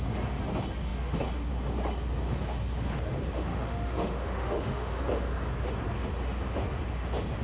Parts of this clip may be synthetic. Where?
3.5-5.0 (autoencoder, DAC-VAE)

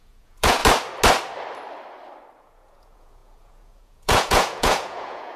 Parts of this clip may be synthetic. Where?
0.0-0.6 (vocoder, Vocos); 2.4-5.4

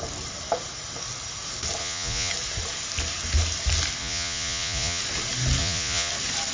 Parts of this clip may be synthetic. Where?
1.8-2.3 (vocoder, Vocos); 4.0-5.0; 5.6-6.1

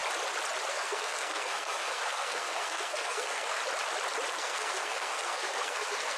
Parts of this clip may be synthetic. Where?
0.7-3.6 (codec, SNAC); 4.3-6.2

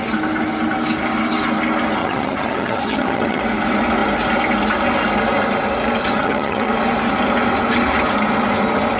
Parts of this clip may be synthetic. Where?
2.0-3.4 (vocoder, HiFi-GAN); 6.1-6.7

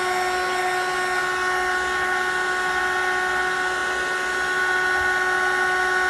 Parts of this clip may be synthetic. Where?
none

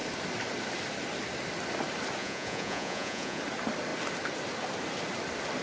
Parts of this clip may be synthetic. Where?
2.2-3.4 (vocoder, Vocos)